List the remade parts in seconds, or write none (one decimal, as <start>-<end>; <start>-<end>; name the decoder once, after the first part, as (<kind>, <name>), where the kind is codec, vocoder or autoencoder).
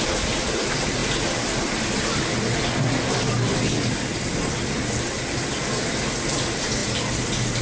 none